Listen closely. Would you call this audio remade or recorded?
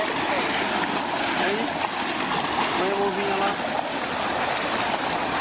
recorded